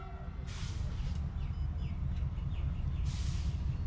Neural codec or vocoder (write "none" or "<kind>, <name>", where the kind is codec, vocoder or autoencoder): none